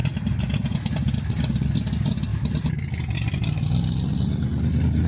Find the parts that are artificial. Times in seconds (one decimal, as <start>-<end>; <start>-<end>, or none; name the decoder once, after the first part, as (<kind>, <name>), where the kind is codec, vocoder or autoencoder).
0.9-2.3 (vocoder, BigVGAN v2); 4.1-5.1